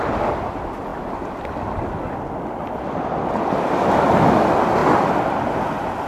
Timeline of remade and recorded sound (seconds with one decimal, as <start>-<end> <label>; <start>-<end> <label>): 0.0-4.8 recorded; 4.8-5.5 remade; 5.5-6.1 recorded